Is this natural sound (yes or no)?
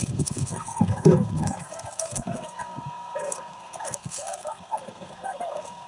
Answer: no